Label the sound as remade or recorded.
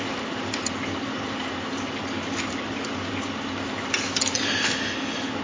recorded